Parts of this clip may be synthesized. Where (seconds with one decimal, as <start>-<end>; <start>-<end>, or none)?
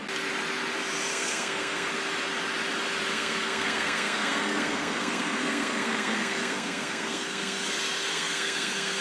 1.1-1.9; 3.1-7.7; 8.1-9.0